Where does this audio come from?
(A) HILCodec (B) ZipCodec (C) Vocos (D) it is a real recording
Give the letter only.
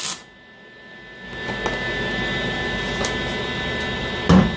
D